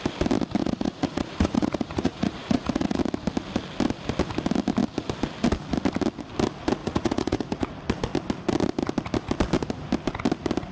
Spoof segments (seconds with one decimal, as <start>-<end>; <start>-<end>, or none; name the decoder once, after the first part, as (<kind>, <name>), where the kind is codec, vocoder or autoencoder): 0.6-3.0 (vocoder, Vocos); 6.8-7.7